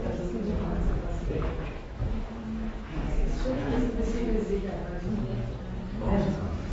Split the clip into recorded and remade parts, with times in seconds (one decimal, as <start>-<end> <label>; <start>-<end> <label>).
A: 0.0-1.2 recorded; 1.2-4.8 remade; 4.8-6.3 recorded; 6.3-6.7 remade